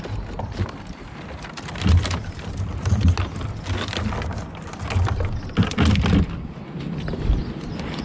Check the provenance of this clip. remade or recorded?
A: recorded